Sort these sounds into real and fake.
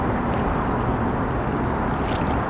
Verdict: real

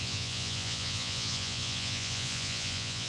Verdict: fake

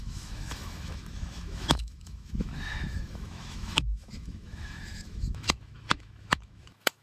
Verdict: fake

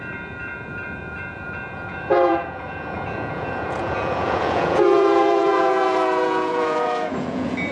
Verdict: fake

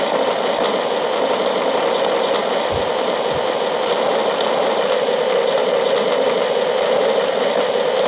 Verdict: real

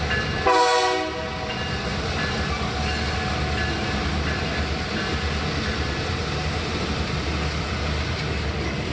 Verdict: real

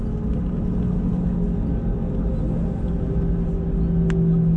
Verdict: real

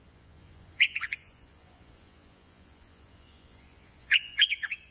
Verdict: fake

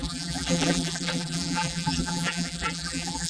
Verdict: fake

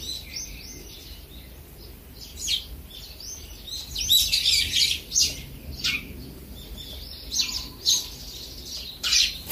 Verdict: real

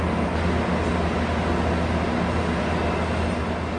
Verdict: real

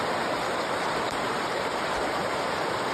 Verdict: fake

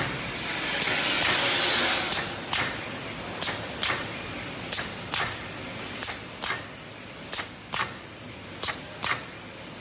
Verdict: real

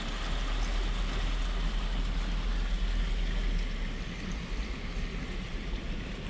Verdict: real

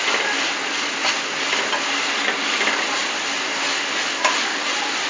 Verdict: real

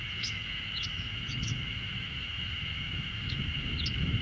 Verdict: fake